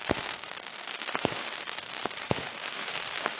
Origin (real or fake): fake